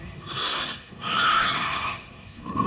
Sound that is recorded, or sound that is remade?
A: remade